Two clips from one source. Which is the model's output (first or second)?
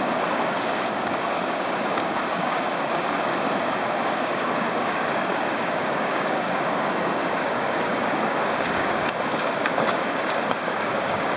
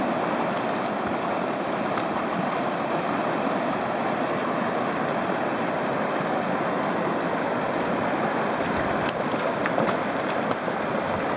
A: first